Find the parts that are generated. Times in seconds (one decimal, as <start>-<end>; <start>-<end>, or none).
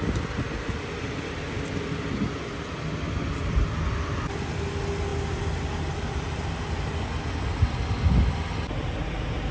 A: none